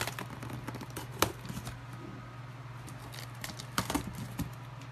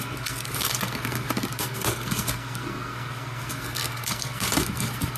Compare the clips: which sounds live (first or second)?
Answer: first